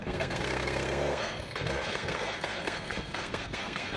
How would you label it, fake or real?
fake